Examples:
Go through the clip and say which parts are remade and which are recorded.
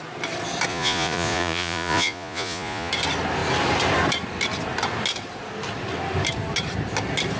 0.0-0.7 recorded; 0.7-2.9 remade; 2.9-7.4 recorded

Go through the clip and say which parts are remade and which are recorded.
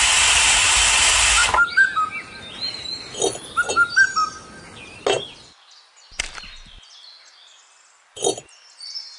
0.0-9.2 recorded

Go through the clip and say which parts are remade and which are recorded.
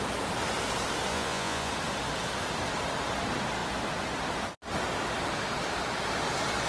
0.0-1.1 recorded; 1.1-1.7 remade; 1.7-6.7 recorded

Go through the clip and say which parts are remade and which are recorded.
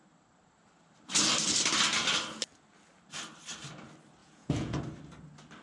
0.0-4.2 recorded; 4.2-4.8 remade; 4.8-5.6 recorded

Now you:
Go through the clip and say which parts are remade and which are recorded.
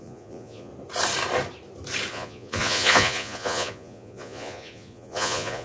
0.0-0.7 remade; 0.7-2.1 recorded; 2.1-5.6 remade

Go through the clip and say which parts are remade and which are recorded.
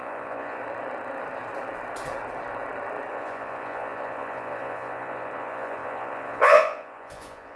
0.0-0.6 remade; 0.6-3.1 recorded; 3.1-7.6 remade